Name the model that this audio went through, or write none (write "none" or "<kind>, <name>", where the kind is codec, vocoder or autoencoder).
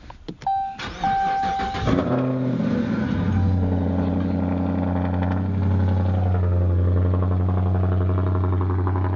none